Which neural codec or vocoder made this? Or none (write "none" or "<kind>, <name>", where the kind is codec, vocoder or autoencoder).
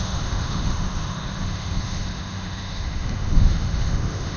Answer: autoencoder, DAC-VAE